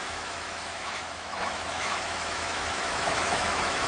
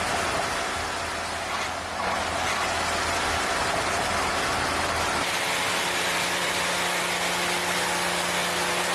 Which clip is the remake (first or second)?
first